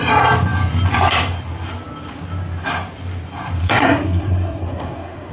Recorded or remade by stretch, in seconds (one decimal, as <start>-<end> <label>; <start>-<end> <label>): 0.0-3.6 recorded; 3.6-5.3 remade